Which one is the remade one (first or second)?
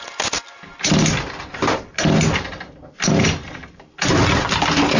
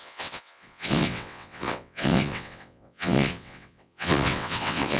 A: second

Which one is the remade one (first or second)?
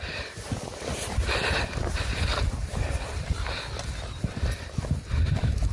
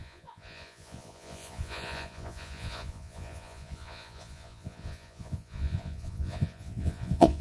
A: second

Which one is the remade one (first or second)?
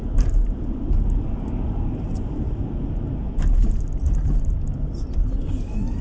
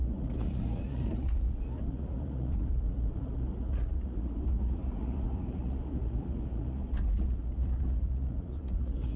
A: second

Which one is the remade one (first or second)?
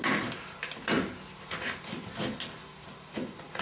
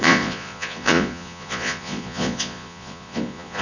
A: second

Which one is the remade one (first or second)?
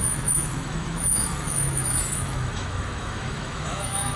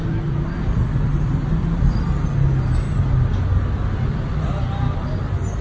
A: first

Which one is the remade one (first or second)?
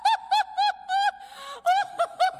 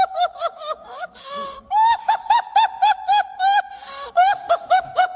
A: second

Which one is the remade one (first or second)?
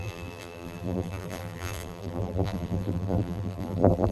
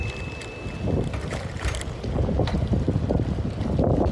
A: first